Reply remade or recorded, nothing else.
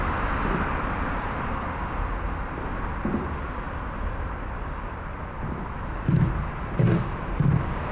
recorded